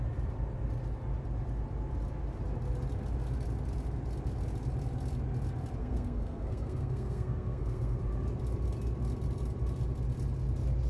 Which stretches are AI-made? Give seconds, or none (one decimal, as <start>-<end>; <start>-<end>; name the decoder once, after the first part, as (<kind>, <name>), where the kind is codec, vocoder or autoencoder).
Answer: 5.8-8.0 (codec, SNAC)